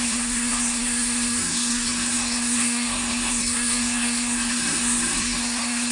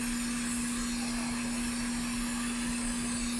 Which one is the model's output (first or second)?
first